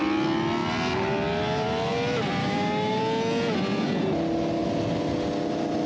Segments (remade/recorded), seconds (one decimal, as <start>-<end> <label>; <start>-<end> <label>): 0.0-2.4 recorded; 2.4-3.0 remade; 3.0-5.9 recorded